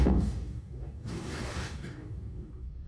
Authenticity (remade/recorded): remade